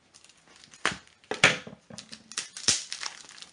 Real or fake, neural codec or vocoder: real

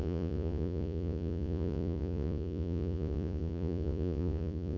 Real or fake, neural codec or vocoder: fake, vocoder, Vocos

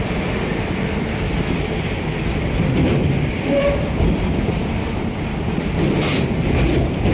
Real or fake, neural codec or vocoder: fake, vocoder, BigVGAN v2